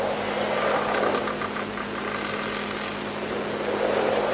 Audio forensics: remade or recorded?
recorded